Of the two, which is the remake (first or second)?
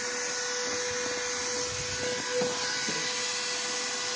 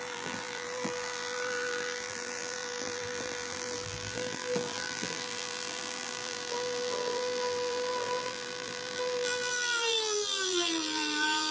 second